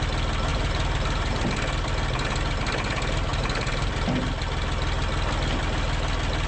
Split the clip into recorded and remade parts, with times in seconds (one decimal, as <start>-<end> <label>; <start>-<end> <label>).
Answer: 0.0-0.5 recorded; 0.5-1.5 remade; 1.5-3.3 recorded; 3.3-3.9 remade; 3.9-6.5 recorded